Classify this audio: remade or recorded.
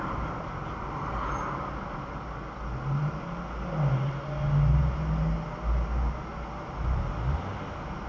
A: recorded